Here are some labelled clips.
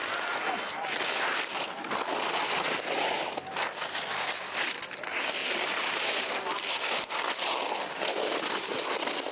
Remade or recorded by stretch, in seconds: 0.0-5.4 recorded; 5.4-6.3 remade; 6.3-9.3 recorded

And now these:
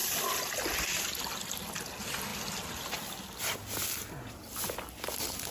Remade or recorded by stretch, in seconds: 0.0-0.8 remade; 0.8-5.5 recorded

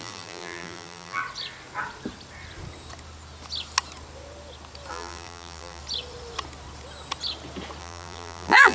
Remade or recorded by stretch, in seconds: 0.0-1.2 remade; 1.2-4.9 recorded; 4.9-5.8 remade; 5.8-7.8 recorded; 7.8-8.7 remade

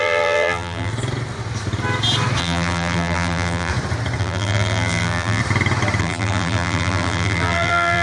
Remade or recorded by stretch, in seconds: 0.0-0.9 remade; 0.9-2.4 recorded; 2.4-3.7 remade; 3.7-4.2 recorded; 4.2-5.4 remade; 5.4-6.0 recorded; 6.0-8.0 remade

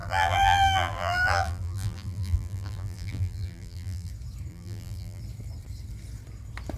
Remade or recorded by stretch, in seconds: 0.0-4.1 remade; 4.1-4.5 recorded; 4.5-5.2 remade; 5.2-6.8 recorded